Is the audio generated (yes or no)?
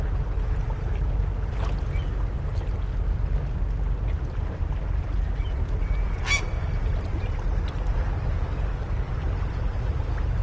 no